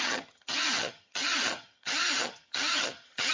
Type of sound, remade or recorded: remade